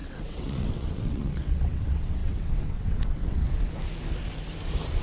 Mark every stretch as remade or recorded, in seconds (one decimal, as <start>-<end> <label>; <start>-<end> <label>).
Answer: 0.0-3.4 remade; 3.4-5.0 recorded